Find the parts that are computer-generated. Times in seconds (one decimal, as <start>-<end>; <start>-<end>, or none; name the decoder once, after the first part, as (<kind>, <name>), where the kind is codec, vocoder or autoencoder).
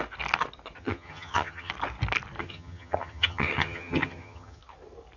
0.8-1.7 (vocoder, HiFi-GAN); 2.4-4.6